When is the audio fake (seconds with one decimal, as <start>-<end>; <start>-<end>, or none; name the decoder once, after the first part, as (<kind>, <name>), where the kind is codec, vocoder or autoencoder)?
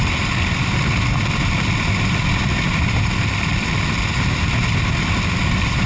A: 0.0-5.9 (vocoder, BigVGAN v2)